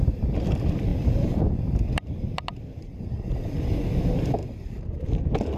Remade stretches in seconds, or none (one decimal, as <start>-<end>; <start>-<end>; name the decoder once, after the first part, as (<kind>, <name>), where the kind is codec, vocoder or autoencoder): none